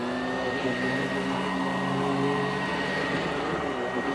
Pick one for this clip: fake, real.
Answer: real